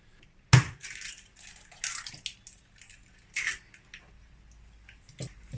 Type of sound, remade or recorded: recorded